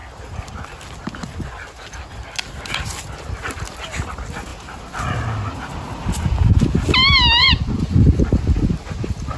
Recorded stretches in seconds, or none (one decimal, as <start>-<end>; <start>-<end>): 0.0-7.4; 8.2-9.4

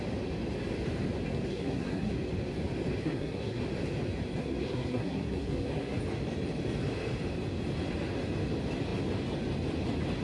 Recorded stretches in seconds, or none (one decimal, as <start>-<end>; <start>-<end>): 0.0-1.5; 2.1-3.0; 3.6-4.4; 6.0-10.2